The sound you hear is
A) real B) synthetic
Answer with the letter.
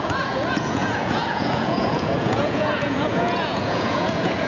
B